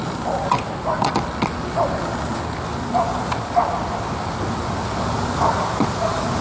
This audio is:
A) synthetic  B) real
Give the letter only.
B